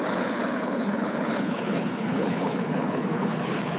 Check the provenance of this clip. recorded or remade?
remade